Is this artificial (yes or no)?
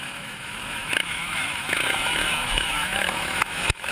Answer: yes